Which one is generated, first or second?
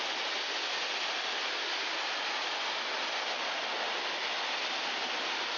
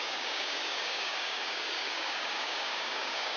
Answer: second